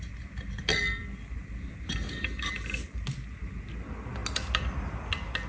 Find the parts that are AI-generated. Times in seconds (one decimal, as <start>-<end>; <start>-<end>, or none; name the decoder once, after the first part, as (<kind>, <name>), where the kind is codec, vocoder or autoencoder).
none